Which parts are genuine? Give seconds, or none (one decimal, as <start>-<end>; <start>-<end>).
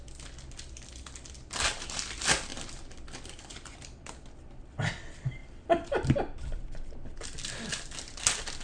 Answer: 0.0-8.6